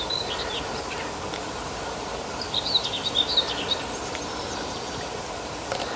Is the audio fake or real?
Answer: real